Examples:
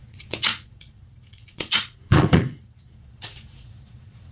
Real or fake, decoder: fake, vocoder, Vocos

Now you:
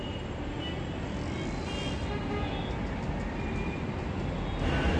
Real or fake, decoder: real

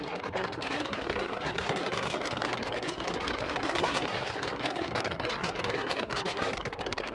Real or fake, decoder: fake, codec, SNAC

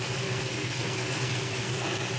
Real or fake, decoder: fake, codec, SNAC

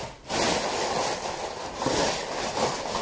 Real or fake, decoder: real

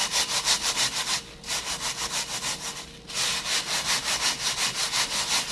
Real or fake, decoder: real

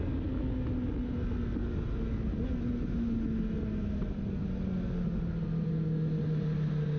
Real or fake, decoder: real